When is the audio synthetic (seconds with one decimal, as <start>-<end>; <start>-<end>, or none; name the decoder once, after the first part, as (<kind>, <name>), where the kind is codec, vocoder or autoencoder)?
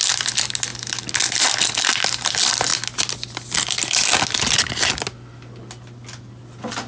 none